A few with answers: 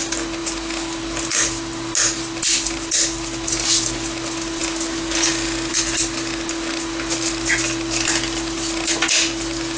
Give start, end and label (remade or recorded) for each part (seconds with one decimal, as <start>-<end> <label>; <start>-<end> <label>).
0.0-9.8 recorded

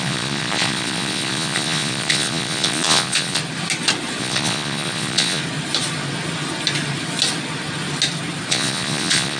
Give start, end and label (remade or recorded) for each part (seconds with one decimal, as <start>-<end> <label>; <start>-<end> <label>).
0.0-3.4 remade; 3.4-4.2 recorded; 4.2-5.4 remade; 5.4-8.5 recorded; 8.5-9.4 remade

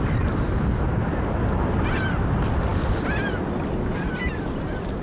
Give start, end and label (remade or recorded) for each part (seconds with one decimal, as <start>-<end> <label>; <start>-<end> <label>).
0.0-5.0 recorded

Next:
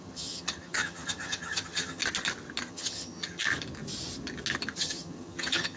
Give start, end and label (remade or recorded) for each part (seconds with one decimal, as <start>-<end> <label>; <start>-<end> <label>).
0.0-2.0 remade; 2.0-2.6 recorded; 2.6-3.4 remade; 3.4-4.7 recorded; 4.7-5.8 remade

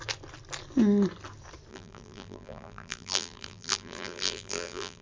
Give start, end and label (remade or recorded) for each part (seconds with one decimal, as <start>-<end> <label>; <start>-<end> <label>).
0.0-1.7 recorded; 1.7-5.0 remade

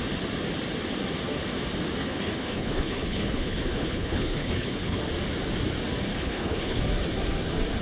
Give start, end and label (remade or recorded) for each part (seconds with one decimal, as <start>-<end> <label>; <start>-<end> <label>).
0.0-2.0 recorded; 2.0-5.0 remade; 5.0-6.1 recorded; 6.1-6.8 remade; 6.8-7.8 recorded